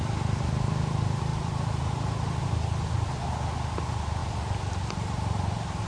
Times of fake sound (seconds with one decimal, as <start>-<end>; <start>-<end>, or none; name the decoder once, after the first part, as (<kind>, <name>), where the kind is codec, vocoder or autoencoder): none